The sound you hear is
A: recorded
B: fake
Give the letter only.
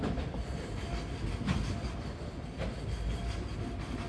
A